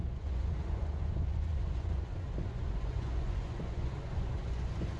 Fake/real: fake